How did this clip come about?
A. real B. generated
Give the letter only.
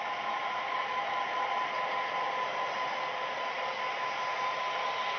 A